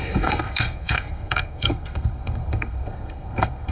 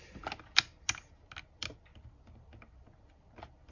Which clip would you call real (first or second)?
second